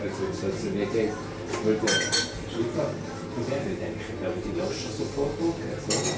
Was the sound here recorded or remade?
recorded